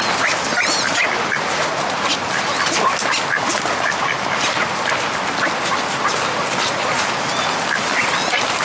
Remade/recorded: recorded